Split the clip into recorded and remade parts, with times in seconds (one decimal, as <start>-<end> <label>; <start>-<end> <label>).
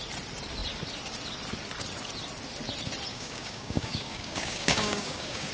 0.0-3.1 recorded; 3.1-5.5 remade